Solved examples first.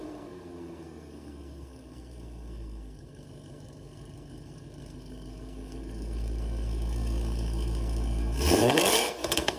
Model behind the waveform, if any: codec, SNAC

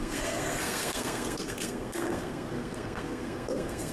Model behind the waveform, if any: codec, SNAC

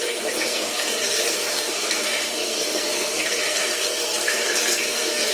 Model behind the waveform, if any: codec, SNAC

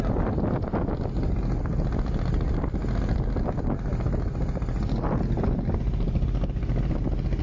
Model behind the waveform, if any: none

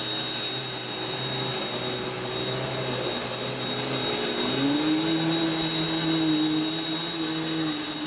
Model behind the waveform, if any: none